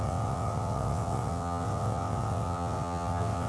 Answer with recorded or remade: remade